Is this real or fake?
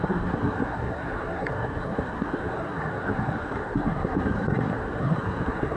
fake